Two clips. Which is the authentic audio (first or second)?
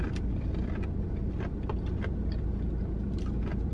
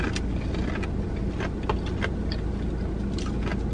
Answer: second